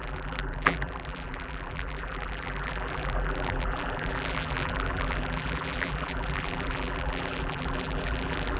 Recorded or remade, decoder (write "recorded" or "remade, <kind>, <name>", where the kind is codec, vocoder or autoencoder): remade, vocoder, BigVGAN v2